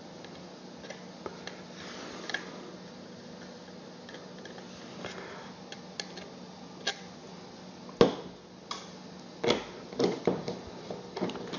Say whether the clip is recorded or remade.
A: recorded